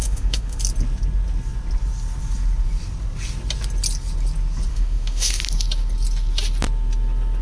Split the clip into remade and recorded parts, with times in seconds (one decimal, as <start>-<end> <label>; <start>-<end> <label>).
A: 0.0-0.6 remade; 0.6-4.7 recorded; 4.7-5.4 remade; 5.4-7.4 recorded